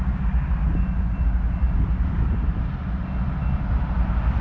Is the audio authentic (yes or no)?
yes